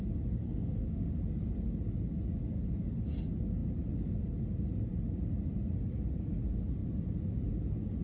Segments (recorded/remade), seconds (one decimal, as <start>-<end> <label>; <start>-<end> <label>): 0.0-0.4 recorded; 0.4-1.1 remade; 1.1-8.0 recorded